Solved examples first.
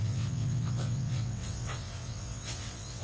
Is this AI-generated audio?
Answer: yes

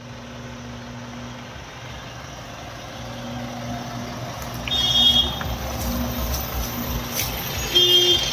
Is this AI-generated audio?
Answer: no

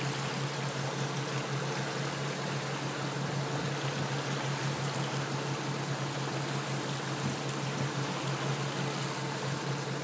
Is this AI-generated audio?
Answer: no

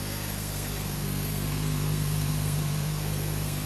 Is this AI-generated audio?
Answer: yes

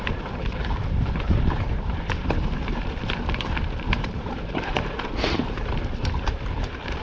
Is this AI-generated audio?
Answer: yes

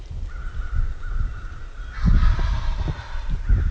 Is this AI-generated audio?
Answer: no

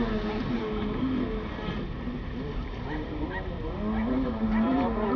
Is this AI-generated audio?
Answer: no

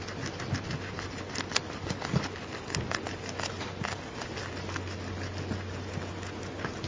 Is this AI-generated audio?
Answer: no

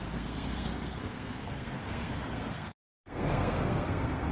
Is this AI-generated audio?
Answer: yes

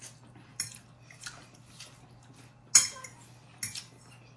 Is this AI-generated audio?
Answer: no